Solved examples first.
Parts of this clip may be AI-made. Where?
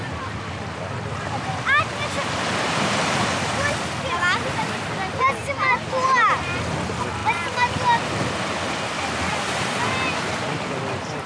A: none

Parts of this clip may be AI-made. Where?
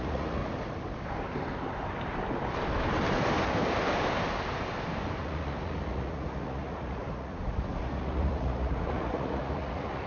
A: 0.0-0.4 (vocoder, Vocos); 5.2-10.1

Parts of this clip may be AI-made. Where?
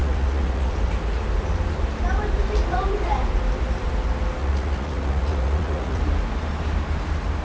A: 0.0-0.7 (vocoder, Vocos); 4.4-6.0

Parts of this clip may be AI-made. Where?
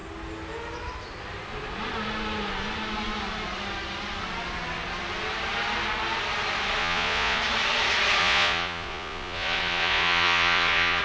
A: 6.8-7.4 (vocoder, Vocos); 8.2-11.0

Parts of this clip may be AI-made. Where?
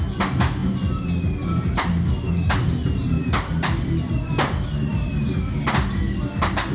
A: none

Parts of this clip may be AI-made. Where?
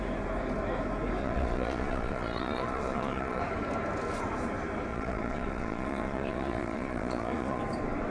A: 1.2-3.4 (vocoder, Vocos); 4.9-7.6